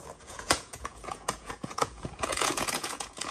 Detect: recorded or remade remade